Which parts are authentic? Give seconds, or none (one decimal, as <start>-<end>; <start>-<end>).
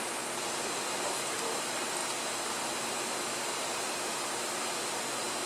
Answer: 0.0-5.5